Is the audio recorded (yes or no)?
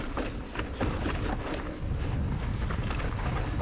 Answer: yes